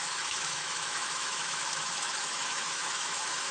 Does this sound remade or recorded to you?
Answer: remade